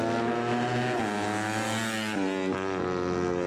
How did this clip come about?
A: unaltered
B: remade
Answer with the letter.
A